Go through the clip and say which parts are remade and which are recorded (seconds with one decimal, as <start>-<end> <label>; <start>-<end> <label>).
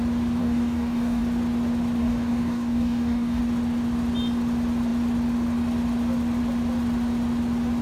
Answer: 0.0-0.4 recorded; 0.4-1.2 remade; 1.2-2.0 recorded; 2.0-3.4 remade; 3.4-7.8 recorded